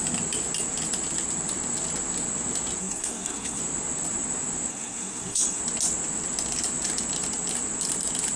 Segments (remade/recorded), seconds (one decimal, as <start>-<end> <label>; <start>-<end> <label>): 0.0-2.8 recorded; 2.8-3.6 remade; 3.6-4.7 recorded; 4.7-5.6 remade; 5.6-8.4 recorded